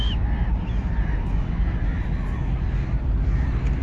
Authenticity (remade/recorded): recorded